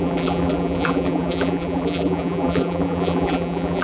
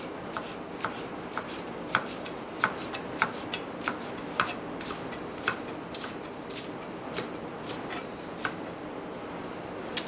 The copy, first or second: first